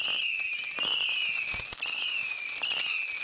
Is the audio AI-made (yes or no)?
no